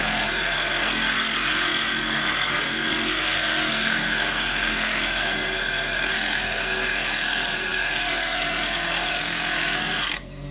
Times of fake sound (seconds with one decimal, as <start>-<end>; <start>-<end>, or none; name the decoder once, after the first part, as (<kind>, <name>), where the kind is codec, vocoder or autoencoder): 0.0-10.5 (codec, SNAC)